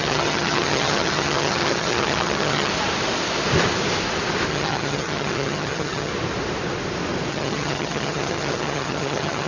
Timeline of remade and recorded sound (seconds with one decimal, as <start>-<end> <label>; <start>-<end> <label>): 0.0-2.7 remade; 2.7-4.5 recorded; 4.5-6.1 remade; 6.1-7.3 recorded; 7.3-9.5 remade